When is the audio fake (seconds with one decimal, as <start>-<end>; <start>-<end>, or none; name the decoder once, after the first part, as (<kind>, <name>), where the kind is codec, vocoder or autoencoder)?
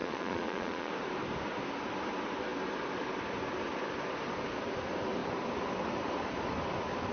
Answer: 0.0-0.9 (vocoder, Vocos)